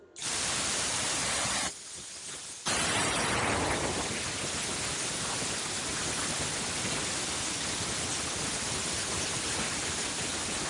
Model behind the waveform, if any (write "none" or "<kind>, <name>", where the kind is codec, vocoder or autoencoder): none